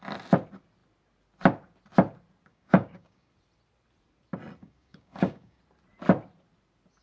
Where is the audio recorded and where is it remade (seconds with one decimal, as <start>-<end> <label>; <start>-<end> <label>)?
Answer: 0.0-2.5 recorded; 2.5-3.3 remade; 3.3-4.6 recorded; 4.6-5.6 remade; 5.6-7.0 recorded